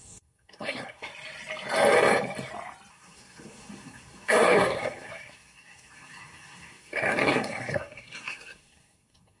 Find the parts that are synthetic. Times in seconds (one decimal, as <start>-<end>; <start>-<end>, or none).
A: 0.0-1.1; 2.9-9.4